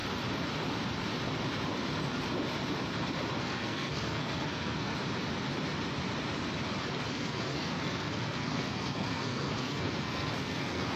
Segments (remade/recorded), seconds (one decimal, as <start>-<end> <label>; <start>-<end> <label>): 0.0-3.4 recorded; 3.4-4.9 remade; 4.9-7.1 recorded; 7.1-11.0 remade